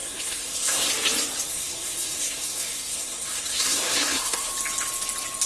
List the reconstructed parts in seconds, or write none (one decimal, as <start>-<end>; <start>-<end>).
0.0-0.9; 1.5-4.5